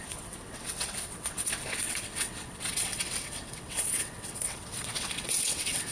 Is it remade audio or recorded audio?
remade